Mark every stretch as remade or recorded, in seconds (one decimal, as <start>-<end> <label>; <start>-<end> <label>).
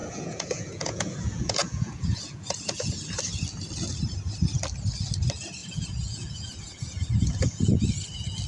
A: 0.0-3.2 remade; 3.2-5.6 recorded; 5.6-7.8 remade; 7.8-8.5 recorded